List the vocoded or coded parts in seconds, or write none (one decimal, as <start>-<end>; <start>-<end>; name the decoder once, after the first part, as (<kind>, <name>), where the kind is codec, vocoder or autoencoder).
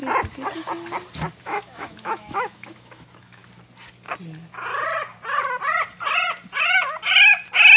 1.4-3.4 (autoencoder, DAC-VAE)